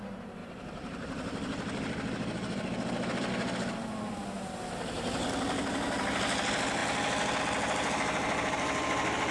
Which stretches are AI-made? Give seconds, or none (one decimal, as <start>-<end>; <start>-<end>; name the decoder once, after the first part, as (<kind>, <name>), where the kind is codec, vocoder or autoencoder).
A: 0.4-3.3 (vocoder, BigVGAN v2)